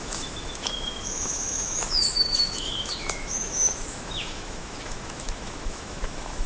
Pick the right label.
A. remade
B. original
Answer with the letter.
A